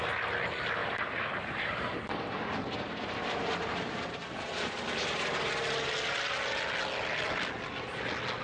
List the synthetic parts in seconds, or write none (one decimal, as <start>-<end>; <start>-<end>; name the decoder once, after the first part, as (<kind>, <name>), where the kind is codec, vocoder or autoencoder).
0.8-5.5 (vocoder, BigVGAN v2)